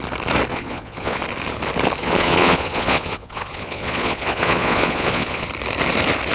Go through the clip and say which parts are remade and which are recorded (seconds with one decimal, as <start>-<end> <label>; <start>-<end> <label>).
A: 0.0-0.5 recorded; 0.5-1.2 remade; 1.2-2.0 recorded; 2.0-5.5 remade; 5.5-6.3 recorded